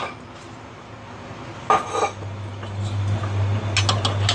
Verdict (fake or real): real